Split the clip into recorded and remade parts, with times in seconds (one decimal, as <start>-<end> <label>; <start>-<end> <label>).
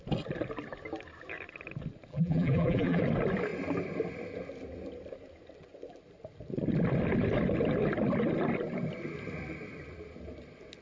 0.0-2.1 recorded; 2.1-3.0 remade; 3.0-10.8 recorded